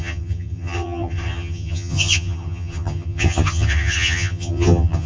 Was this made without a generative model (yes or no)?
no